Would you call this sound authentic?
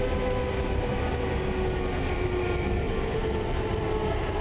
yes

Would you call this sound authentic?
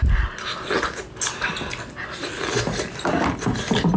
yes